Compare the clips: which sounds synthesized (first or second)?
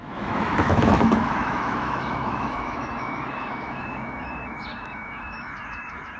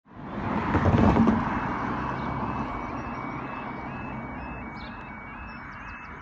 first